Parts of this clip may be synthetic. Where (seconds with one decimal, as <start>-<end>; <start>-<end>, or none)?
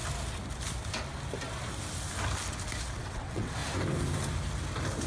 3.0-3.6